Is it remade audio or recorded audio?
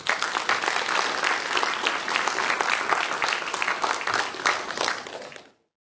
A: recorded